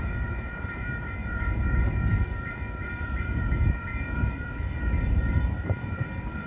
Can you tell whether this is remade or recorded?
remade